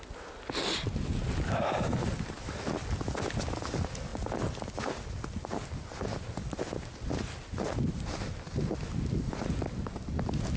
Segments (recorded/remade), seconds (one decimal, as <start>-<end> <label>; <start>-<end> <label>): 0.0-10.6 recorded